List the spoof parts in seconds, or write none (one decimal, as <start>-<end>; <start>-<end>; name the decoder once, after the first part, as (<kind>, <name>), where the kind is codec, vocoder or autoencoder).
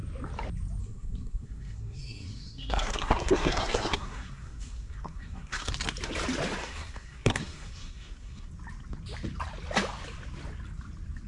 0.8-5.7 (codec, SNAC); 6.6-8.5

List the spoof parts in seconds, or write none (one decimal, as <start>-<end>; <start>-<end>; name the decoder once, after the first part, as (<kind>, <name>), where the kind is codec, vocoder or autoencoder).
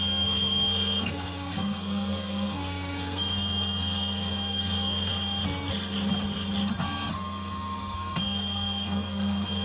0.0-5.1 (codec, SNAC); 7.1-9.6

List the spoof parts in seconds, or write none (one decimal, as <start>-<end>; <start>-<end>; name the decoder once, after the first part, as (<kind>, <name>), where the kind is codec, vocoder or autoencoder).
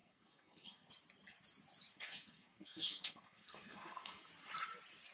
0.0-0.9 (codec, SNAC); 1.9-4.3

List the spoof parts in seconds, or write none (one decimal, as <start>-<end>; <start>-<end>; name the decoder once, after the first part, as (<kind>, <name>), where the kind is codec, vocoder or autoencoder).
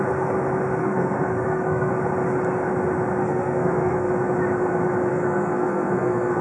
0.8-1.9 (codec, SNAC); 3.2-4.1; 5.1-6.4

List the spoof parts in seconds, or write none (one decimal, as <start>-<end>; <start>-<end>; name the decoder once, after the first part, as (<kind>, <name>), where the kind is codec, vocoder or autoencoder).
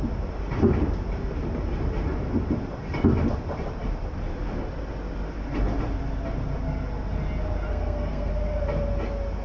7.7-8.3 (codec, SNAC)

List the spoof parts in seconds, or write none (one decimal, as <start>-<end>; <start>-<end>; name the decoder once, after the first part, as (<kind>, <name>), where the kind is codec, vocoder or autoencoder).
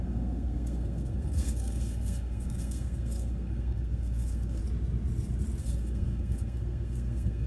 0.0-4.6 (codec, SNAC); 5.6-7.5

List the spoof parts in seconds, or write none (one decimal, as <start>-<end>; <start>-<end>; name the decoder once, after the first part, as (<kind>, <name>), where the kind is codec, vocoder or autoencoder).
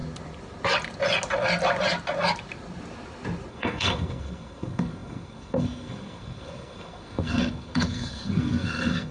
3.5-9.1 (codec, SNAC)